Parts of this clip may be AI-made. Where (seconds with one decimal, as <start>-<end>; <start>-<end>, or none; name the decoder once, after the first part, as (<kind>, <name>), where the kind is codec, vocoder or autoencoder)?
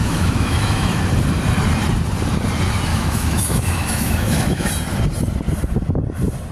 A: 0.0-1.0 (autoencoder, DAC-VAE); 2.9-4.7